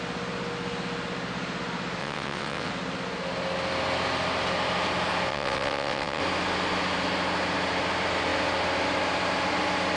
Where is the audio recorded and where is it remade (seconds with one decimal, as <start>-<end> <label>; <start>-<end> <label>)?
0.0-2.0 recorded; 2.0-2.7 remade; 2.7-5.3 recorded; 5.3-6.2 remade; 6.2-10.0 recorded